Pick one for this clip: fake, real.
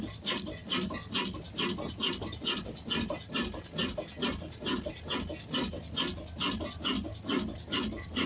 real